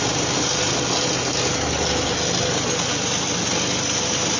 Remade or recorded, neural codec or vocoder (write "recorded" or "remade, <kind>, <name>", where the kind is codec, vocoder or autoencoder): recorded